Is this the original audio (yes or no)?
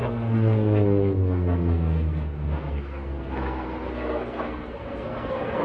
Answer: no